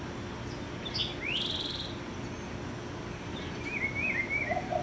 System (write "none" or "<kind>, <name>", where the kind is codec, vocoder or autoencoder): none